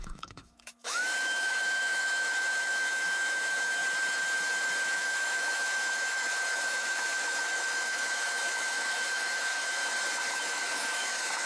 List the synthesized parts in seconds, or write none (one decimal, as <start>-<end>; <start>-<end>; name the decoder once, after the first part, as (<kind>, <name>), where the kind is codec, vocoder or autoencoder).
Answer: 0.0-3.8 (autoencoder, DAC-VAE); 4.9-9.8; 10.3-11.5